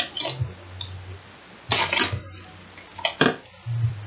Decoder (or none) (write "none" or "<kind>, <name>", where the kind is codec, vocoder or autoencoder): none